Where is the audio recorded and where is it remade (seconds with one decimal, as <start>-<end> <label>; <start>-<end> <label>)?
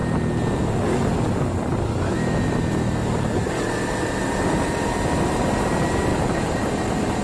0.0-7.2 recorded